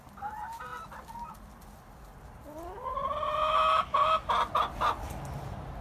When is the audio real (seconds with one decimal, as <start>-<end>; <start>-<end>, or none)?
0.0-5.8